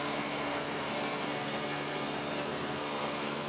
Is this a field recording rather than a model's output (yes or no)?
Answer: no